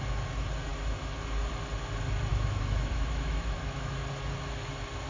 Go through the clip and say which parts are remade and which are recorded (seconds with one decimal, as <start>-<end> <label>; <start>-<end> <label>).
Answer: 0.0-2.3 recorded; 2.3-3.9 remade; 3.9-5.1 recorded